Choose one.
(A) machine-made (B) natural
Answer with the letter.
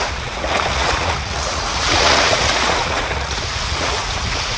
A